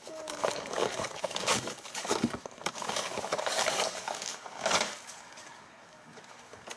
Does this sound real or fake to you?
fake